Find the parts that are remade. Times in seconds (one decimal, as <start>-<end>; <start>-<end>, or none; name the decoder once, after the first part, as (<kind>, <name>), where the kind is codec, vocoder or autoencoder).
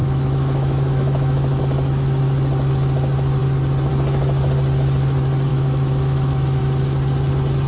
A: 0.0-1.6 (autoencoder, DAC-VAE); 5.5-6.6